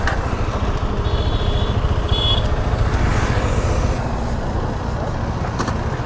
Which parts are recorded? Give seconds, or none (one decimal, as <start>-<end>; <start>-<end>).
0.0-6.1